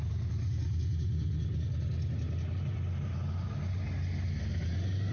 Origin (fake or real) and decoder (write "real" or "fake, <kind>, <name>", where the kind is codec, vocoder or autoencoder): real